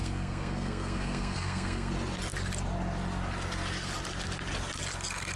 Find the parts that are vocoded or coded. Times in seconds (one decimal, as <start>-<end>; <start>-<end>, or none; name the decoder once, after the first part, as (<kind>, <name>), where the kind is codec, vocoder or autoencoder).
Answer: 0.0-1.9 (codec, SNAC)